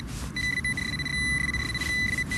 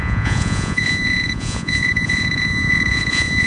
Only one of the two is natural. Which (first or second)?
first